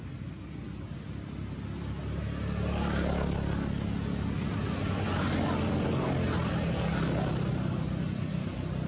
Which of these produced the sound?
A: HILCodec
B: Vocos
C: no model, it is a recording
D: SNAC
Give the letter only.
C